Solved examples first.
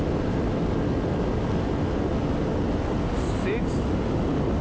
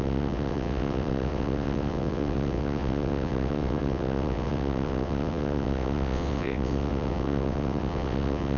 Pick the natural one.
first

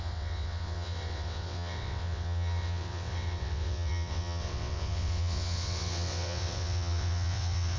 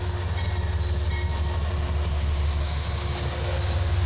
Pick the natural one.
second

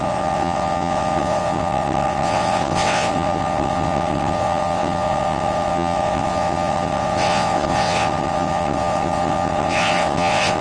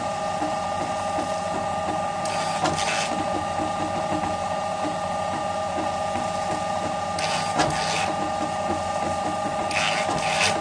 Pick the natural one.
second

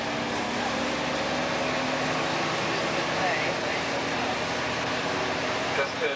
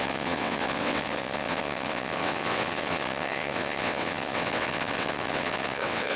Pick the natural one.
first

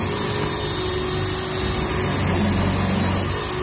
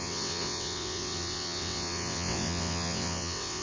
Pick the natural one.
first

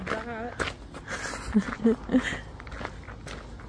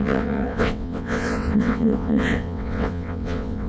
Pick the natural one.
first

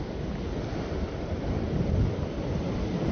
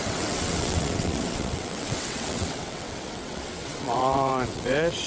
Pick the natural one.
first